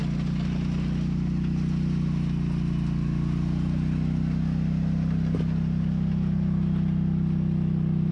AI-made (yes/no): no